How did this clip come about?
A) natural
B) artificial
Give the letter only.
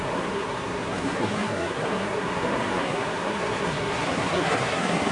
B